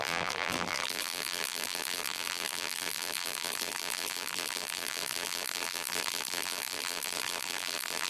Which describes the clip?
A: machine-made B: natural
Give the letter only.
A